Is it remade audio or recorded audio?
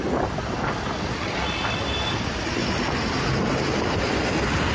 recorded